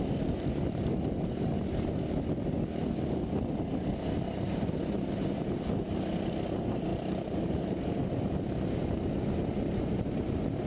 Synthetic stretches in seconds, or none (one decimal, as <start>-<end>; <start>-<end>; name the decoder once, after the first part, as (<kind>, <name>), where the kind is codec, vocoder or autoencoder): none